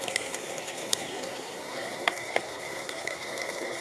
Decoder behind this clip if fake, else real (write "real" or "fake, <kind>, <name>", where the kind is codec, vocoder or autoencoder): fake, codec, SNAC